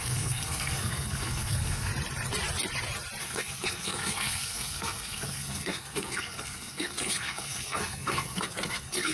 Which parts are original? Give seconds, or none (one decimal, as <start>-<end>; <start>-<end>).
1.9-3.2